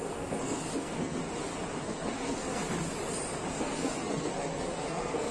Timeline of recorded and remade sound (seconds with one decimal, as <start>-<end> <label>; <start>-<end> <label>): 0.0-1.2 remade; 1.2-1.8 recorded; 1.8-2.6 remade; 2.6-3.6 recorded; 3.6-5.3 remade